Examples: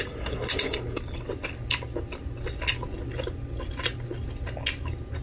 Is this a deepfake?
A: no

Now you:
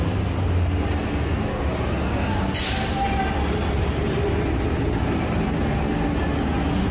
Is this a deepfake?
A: no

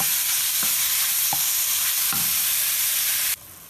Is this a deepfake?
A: no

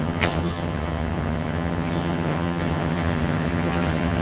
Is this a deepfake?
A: yes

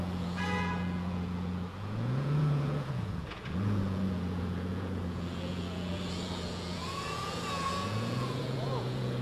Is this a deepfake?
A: yes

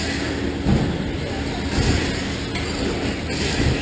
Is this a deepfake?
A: no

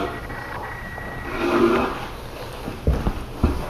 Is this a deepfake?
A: no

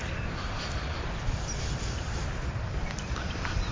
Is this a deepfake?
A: no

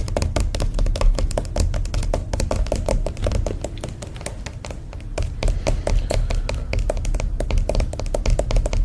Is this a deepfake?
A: no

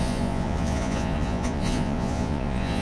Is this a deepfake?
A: yes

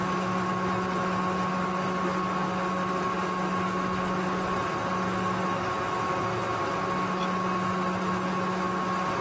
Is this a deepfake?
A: no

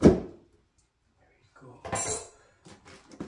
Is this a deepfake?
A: no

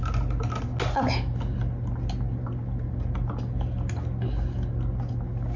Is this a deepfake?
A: no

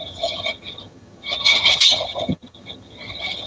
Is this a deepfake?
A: yes